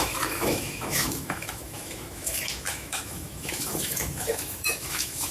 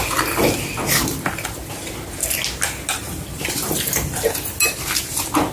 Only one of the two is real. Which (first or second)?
second